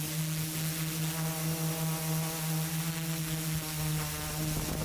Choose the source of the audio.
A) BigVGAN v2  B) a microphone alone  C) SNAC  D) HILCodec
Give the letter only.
B